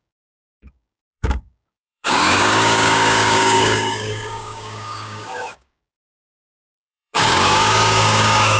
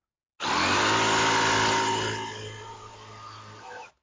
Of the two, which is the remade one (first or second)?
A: first